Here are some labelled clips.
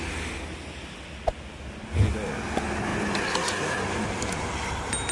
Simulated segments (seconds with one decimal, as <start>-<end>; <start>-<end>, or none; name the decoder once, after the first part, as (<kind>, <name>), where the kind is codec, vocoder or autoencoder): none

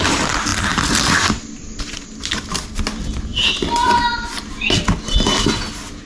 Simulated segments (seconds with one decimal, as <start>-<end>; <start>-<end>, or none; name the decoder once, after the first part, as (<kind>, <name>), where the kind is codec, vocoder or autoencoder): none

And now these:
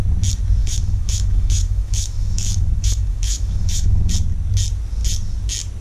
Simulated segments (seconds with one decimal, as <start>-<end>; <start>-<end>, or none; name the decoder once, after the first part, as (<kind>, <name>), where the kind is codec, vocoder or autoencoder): 0.6-4.1 (autoencoder, DAC-VAE)